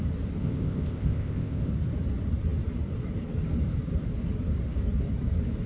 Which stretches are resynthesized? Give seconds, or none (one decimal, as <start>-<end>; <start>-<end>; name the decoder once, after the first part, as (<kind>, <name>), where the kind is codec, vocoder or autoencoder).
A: 0.4-1.7 (codec, ZipCodec)